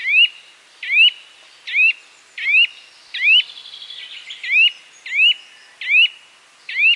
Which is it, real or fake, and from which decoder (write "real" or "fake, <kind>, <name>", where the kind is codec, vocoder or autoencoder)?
real